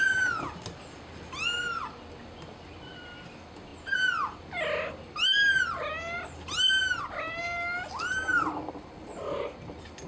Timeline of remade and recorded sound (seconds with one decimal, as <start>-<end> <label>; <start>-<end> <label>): 0.0-10.1 recorded